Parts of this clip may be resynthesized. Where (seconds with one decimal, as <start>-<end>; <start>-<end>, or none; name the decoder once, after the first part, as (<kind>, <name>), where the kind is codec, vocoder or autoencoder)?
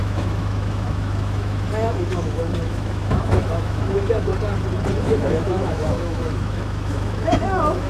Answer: 0.0-4.3 (autoencoder, DAC-VAE); 5.0-7.9